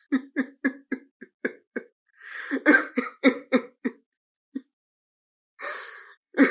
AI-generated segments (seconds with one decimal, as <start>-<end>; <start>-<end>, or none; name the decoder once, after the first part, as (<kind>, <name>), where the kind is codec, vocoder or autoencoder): 1.4-6.5 (vocoder, BigVGAN v2)